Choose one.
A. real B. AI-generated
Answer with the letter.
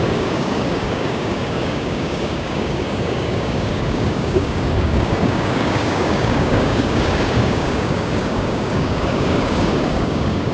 B